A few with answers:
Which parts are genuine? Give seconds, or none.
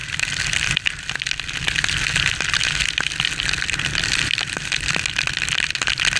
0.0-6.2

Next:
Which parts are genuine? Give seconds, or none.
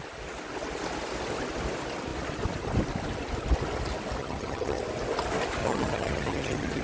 0.0-4.2; 4.8-5.6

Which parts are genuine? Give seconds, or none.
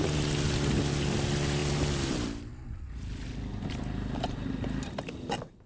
0.0-5.7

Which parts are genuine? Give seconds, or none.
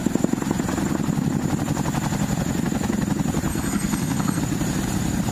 0.0-3.5; 4.4-5.3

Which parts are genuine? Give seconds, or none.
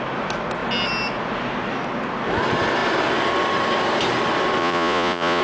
0.0-4.6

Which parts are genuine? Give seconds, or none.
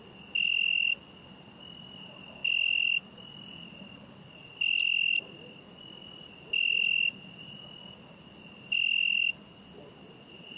0.0-10.6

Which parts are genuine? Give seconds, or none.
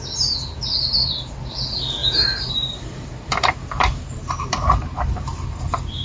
0.0-2.0; 5.6-6.0